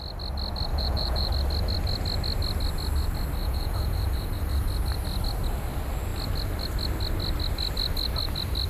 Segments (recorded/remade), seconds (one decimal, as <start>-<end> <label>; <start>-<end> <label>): 0.0-0.7 recorded; 0.7-1.3 remade; 1.3-3.4 recorded; 3.4-4.4 remade; 4.4-8.7 recorded